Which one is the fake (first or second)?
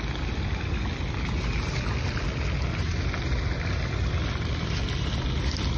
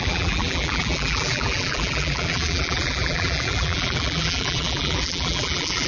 second